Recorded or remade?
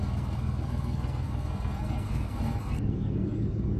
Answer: remade